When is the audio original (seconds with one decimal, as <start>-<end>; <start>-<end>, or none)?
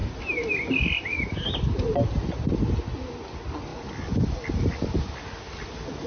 0.0-6.1